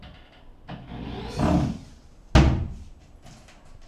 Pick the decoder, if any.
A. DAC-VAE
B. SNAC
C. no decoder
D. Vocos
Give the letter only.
C